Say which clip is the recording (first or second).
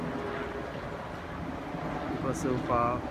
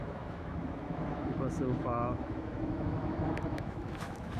first